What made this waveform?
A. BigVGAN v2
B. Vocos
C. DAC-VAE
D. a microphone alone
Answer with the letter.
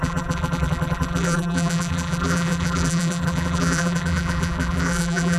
A